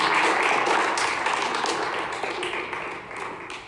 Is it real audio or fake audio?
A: real